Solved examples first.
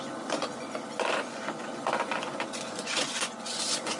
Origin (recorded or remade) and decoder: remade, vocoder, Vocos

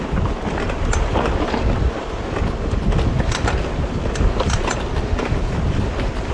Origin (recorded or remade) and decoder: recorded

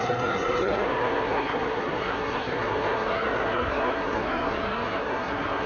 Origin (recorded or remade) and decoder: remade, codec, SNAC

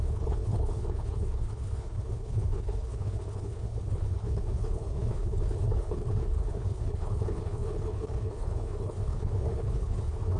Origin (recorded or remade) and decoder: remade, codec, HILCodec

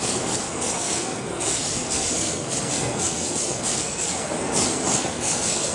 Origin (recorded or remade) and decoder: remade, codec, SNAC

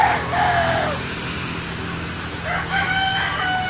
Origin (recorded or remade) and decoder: recorded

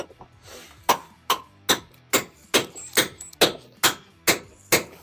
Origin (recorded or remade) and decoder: recorded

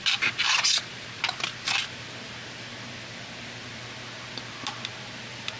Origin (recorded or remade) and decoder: recorded